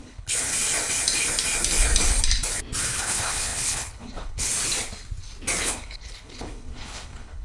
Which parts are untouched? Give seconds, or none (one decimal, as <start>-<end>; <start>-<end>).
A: 0.5-2.8; 4.5-5.6

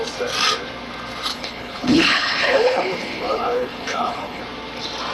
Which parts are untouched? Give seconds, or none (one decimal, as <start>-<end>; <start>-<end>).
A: 0.0-1.3; 4.4-5.1

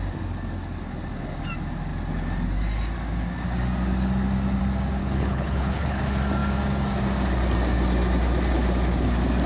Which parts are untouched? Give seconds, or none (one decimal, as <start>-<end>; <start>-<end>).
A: 0.0-5.0; 6.0-9.5